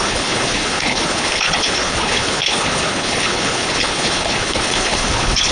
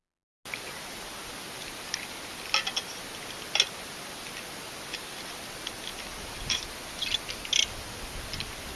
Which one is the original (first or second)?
second